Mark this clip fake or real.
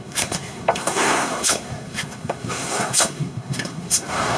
fake